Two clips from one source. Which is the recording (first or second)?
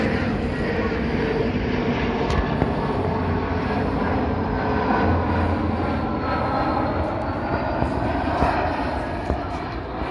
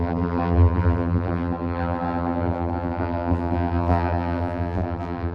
first